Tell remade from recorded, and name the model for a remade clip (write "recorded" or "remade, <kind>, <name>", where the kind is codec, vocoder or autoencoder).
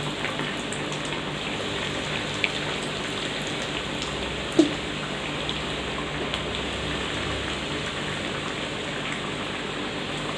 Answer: recorded